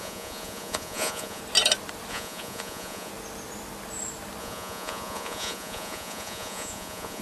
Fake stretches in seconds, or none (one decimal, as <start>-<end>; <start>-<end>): 0.0-1.4; 2.1-3.1; 4.4-7.2